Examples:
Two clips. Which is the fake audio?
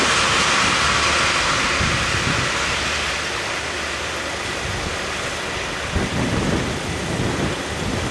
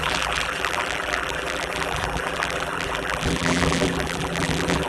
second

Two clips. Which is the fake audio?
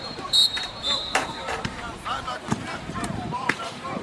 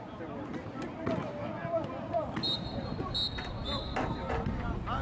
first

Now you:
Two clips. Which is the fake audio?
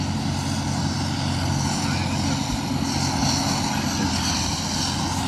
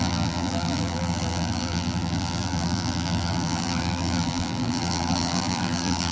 second